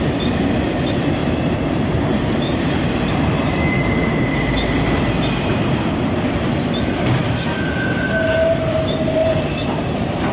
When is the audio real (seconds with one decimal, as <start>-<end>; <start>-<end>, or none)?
0.0-1.2; 3.1-9.2